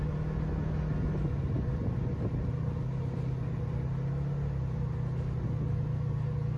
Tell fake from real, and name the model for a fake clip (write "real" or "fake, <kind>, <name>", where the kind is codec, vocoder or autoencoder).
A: real